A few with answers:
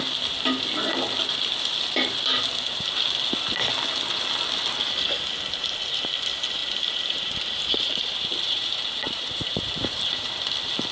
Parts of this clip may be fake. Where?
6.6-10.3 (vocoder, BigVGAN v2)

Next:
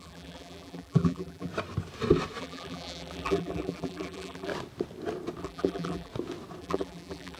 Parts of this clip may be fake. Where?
0.0-1.5 (vocoder, BigVGAN v2); 2.4-4.5; 5.4-6.1; 6.6-7.4

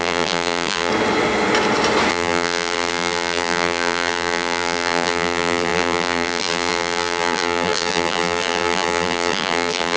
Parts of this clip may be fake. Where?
0.0-0.9 (vocoder, BigVGAN v2); 2.1-10.0

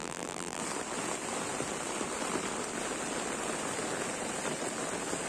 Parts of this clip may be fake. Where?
0.0-0.6 (vocoder, BigVGAN v2)